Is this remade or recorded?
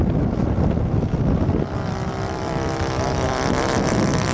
remade